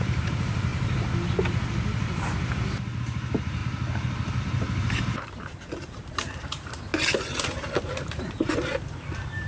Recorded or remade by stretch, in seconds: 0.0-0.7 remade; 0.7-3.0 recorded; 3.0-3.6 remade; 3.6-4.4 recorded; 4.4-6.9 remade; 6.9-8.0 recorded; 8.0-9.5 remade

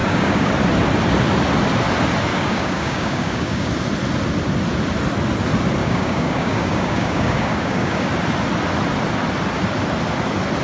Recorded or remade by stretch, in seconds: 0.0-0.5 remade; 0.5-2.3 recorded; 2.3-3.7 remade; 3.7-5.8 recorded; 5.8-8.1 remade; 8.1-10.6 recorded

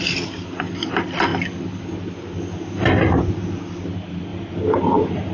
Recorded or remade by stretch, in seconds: 0.0-4.3 recorded; 4.3-5.3 remade

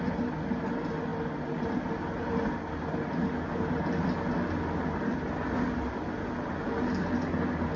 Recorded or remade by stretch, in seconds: 0.0-7.8 recorded